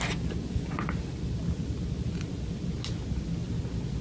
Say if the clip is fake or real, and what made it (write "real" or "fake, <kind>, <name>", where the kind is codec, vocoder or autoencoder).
real